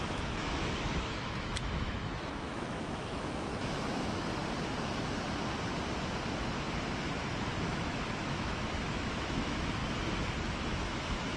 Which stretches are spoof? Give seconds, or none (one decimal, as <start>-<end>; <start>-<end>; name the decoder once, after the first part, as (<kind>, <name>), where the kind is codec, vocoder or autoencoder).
0.0-4.4 (autoencoder, DAC-VAE); 7.6-9.8; 10.5-11.4